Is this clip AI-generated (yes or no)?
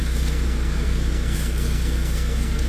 yes